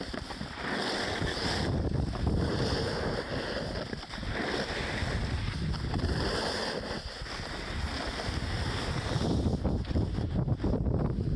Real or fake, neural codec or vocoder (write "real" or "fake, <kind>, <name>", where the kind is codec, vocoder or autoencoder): real